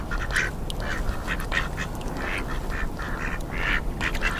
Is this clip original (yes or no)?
yes